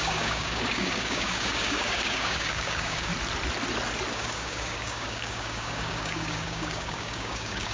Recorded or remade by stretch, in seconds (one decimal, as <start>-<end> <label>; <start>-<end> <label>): 0.0-3.1 remade; 3.1-4.1 recorded; 4.1-7.7 remade